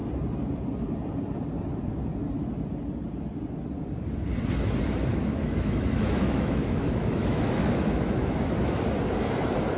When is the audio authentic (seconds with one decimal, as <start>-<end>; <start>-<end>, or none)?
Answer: 0.0-5.1; 8.8-9.8